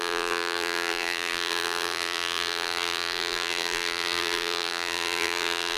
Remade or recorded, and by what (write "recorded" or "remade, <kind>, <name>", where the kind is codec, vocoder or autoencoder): remade, vocoder, BigVGAN v2